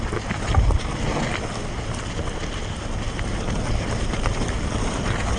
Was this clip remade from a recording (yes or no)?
no